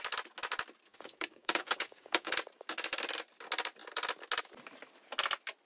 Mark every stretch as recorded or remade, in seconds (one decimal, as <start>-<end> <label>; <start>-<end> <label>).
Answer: 0.0-0.9 recorded; 0.9-2.3 remade; 2.3-5.7 recorded